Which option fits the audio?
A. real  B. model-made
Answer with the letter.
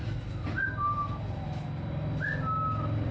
A